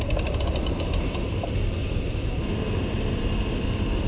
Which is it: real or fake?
real